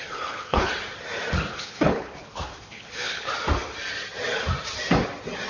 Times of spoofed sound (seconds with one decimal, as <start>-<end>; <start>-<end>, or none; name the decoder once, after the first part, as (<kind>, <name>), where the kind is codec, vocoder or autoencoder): 0.0-0.7 (codec, HILCodec); 1.5-3.3